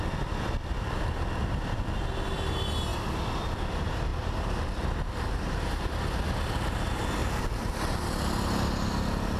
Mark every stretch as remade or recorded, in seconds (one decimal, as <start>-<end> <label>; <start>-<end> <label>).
0.0-7.2 recorded; 7.2-8.1 remade; 8.1-9.4 recorded